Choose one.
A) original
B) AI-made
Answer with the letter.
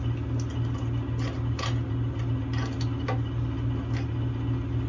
A